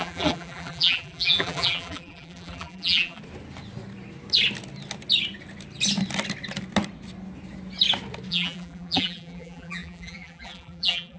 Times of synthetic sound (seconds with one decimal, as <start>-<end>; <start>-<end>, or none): 0.0-3.2; 8.3-11.2